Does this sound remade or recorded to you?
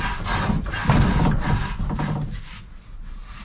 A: recorded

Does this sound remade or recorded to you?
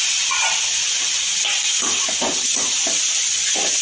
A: recorded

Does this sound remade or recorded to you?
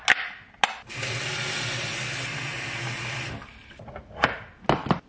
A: recorded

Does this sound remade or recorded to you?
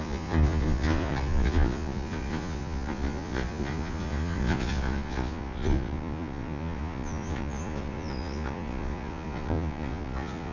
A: remade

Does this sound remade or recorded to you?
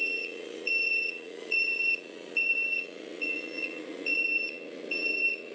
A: remade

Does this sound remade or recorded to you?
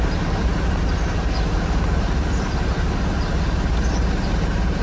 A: recorded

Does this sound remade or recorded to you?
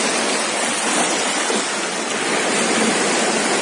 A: recorded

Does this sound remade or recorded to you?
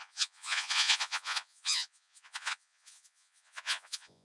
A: remade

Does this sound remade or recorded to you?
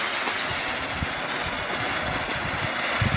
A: recorded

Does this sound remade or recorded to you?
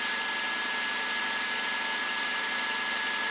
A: recorded